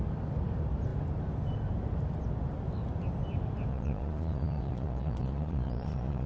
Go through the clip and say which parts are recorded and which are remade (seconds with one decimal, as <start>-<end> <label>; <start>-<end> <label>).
0.0-3.7 recorded; 3.7-6.3 remade